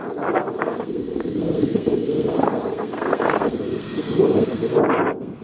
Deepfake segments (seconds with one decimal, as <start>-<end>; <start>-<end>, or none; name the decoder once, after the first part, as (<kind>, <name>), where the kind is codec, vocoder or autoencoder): 0.0-5.4 (codec, SNAC)